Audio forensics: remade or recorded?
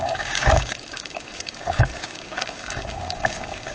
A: remade